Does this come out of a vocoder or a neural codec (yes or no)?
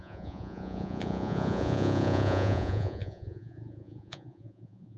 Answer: yes